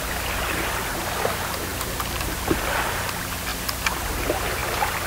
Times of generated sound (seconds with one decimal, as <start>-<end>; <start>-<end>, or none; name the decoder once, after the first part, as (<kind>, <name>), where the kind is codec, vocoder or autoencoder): 3.5-4.1 (vocoder, BigVGAN v2); 4.6-5.1